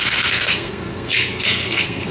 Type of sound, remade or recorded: remade